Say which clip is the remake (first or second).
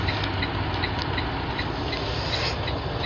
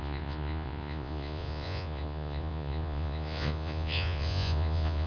second